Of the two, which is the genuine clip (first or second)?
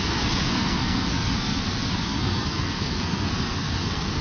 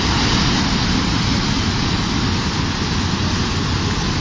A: second